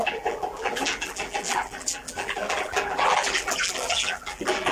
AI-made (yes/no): yes